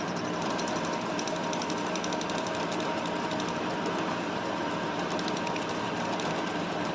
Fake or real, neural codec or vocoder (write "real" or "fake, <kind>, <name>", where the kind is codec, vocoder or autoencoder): fake, vocoder, BigVGAN v2